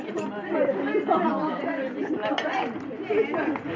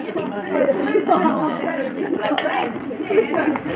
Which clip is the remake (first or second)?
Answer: second